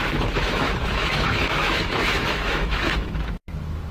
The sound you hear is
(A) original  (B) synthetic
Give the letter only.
B